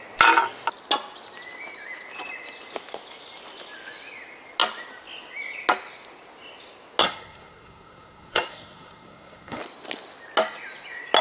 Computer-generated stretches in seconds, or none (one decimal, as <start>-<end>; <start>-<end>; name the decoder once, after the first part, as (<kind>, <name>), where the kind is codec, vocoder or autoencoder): 7.0-9.6 (codec, SNAC)